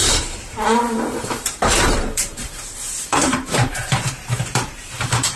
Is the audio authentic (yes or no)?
no